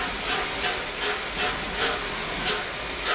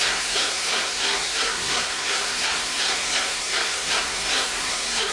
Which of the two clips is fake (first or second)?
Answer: second